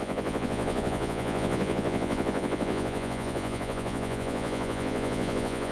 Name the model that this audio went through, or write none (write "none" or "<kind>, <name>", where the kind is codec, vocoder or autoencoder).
vocoder, Vocos